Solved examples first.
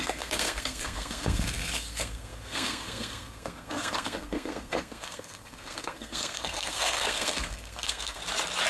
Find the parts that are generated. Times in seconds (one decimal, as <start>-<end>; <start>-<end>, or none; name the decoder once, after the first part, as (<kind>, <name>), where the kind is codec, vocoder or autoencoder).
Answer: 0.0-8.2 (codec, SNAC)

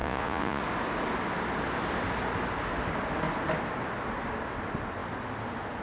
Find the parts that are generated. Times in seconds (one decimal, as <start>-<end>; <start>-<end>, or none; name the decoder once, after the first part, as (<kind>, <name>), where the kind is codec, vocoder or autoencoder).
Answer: 0.0-0.6 (vocoder, Vocos)

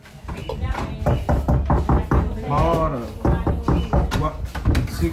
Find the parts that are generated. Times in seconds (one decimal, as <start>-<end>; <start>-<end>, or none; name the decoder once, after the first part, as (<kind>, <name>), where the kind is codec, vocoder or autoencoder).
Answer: none